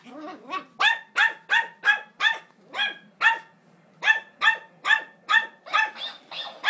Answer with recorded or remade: recorded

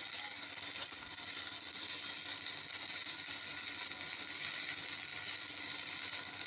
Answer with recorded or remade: recorded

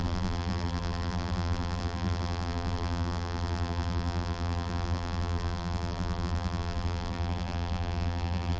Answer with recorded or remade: remade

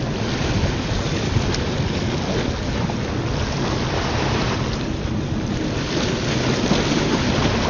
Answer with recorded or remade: recorded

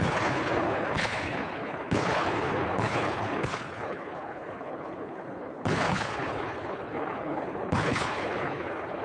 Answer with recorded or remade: remade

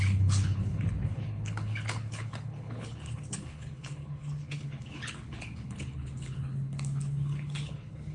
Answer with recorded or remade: remade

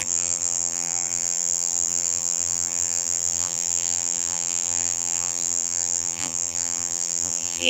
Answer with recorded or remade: remade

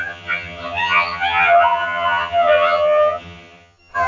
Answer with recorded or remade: remade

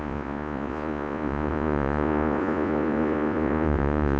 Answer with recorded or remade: remade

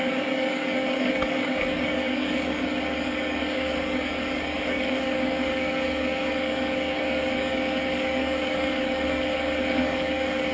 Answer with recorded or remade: remade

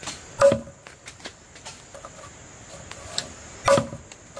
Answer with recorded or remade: recorded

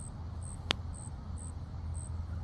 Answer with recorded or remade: recorded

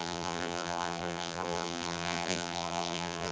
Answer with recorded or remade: remade